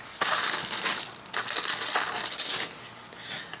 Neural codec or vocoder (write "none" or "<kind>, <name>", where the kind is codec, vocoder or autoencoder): none